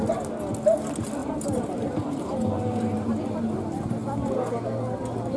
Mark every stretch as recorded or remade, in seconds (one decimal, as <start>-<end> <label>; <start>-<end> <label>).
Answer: 0.0-1.2 recorded; 1.2-3.1 remade; 3.1-5.4 recorded